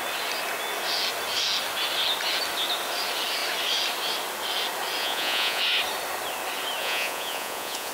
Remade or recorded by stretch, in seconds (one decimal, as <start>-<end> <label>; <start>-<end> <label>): 0.0-5.0 recorded; 5.0-5.6 remade; 5.6-6.8 recorded; 6.8-7.9 remade